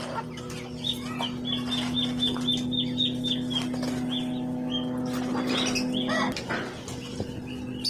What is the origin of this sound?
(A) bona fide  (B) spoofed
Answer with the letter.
A